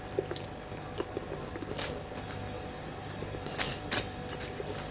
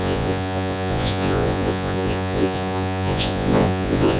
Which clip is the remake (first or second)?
second